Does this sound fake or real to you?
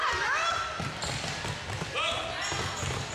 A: real